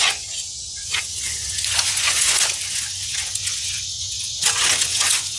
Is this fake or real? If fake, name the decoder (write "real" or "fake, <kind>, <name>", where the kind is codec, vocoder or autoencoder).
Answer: fake, vocoder, Vocos